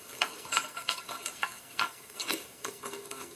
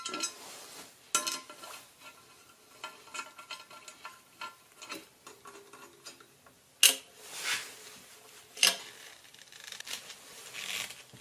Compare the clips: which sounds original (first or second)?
second